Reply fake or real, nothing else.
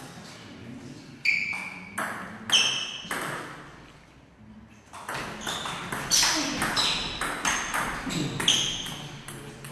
real